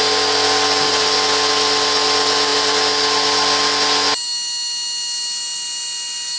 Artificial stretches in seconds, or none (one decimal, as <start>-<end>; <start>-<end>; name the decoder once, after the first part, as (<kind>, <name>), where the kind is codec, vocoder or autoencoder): none